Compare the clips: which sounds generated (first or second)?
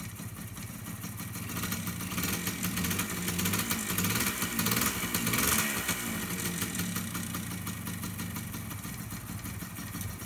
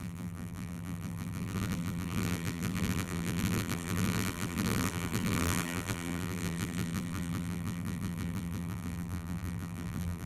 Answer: second